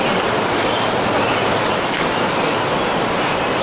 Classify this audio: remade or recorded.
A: recorded